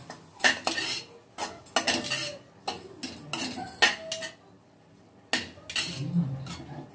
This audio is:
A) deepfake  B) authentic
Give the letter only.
B